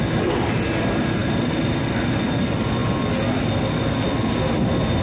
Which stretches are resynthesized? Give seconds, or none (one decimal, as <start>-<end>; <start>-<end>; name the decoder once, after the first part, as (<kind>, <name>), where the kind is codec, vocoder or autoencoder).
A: none